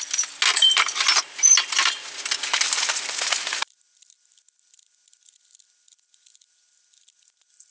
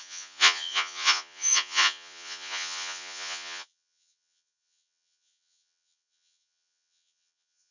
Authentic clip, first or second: first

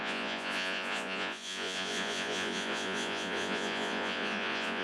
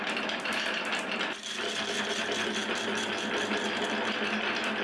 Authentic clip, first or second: second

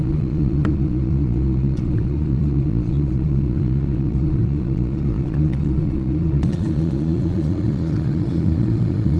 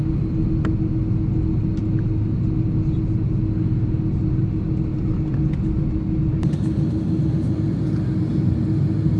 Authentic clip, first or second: second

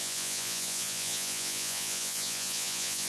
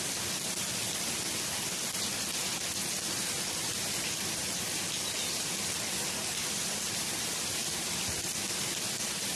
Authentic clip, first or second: second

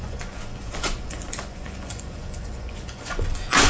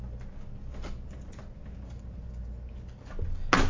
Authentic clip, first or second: second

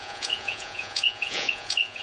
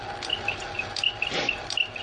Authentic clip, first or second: second